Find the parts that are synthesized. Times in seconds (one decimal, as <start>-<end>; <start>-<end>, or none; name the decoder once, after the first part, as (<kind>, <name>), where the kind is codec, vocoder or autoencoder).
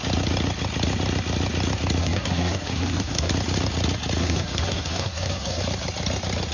2.0-3.3 (codec, SNAC); 4.2-5.6